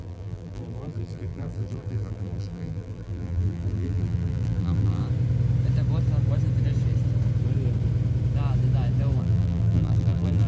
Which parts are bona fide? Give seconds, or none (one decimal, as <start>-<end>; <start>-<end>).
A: 5.0-9.2